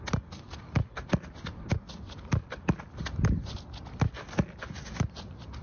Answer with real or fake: real